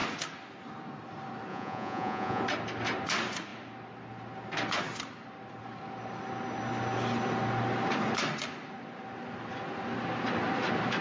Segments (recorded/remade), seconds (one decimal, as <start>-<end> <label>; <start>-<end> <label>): 0.0-1.5 recorded; 1.5-2.4 remade; 2.4-11.0 recorded